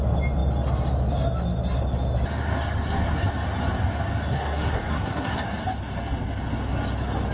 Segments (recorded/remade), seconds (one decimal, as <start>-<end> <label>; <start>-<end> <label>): 0.0-4.3 recorded; 4.3-5.3 remade; 5.3-7.3 recorded